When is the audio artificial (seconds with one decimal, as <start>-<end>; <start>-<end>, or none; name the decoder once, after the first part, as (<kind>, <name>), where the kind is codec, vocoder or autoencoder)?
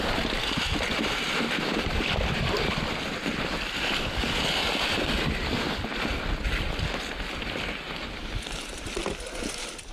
0.0-6.1 (vocoder, BigVGAN v2); 6.9-9.0